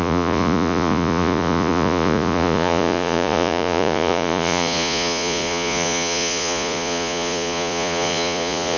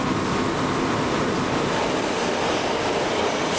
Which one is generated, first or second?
first